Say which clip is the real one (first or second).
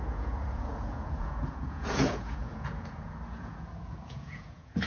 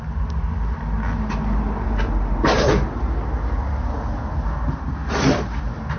second